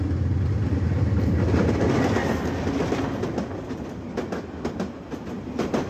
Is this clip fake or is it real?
real